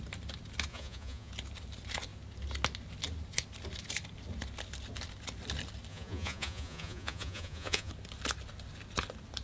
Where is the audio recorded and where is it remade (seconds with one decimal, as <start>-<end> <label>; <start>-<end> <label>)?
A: 0.0-0.7 recorded; 0.7-1.3 remade; 1.3-5.9 recorded; 5.9-7.9 remade; 7.9-9.4 recorded